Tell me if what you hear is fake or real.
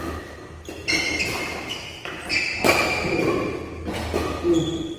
real